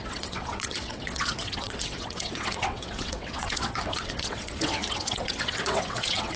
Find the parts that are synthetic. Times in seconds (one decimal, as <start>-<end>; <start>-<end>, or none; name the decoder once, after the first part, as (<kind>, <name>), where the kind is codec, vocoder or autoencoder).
0.0-6.4 (vocoder, WaveNeXt)